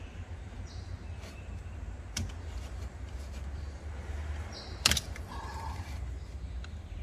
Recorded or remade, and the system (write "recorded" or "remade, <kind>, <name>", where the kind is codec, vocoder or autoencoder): remade, vocoder, BigVGAN v2